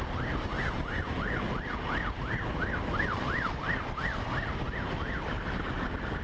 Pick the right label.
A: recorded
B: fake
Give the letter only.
A